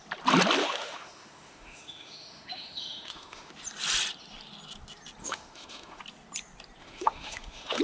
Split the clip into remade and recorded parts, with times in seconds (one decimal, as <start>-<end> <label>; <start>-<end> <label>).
0.0-0.6 recorded; 0.6-3.5 remade; 3.5-5.2 recorded; 5.2-6.0 remade; 6.0-6.8 recorded; 6.8-7.8 remade